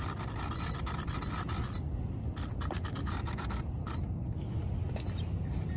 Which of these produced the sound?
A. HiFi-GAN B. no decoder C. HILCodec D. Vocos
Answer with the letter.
B